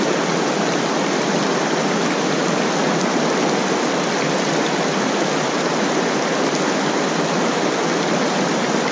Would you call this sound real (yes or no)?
yes